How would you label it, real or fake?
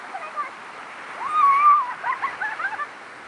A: real